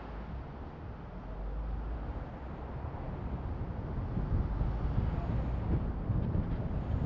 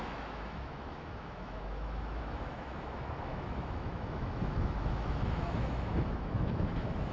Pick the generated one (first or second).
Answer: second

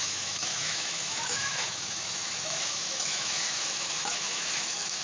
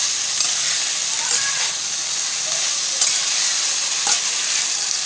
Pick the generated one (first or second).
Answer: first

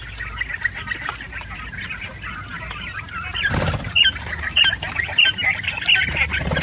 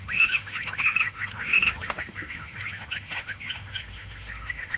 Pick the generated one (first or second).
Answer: second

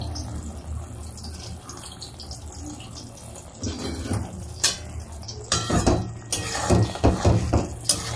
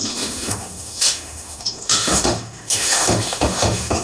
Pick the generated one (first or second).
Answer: second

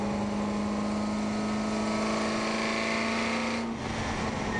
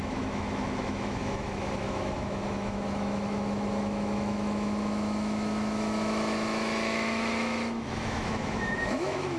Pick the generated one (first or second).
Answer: second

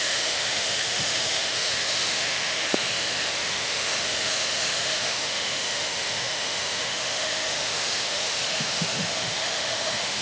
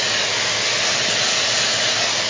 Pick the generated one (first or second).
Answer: first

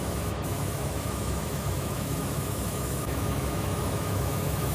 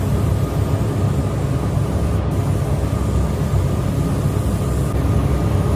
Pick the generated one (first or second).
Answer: first